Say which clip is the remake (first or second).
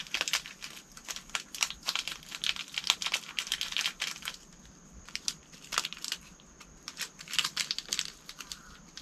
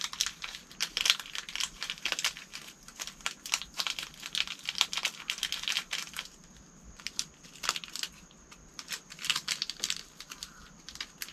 first